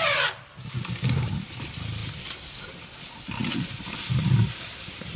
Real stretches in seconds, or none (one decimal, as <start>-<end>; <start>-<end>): 0.0-5.2